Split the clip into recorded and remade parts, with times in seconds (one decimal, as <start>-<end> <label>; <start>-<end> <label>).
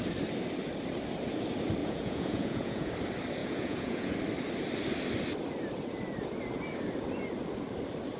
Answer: 0.0-1.8 recorded; 1.8-2.9 remade; 2.9-3.4 recorded; 3.4-4.1 remade; 4.1-8.2 recorded